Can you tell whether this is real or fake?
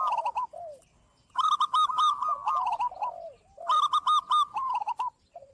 real